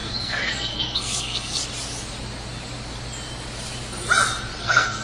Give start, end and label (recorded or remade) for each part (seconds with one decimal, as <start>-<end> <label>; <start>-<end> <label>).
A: 0.0-1.6 remade; 1.6-4.6 recorded; 4.6-5.0 remade